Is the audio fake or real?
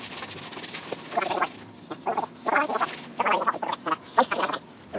real